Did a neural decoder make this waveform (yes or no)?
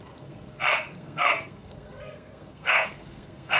yes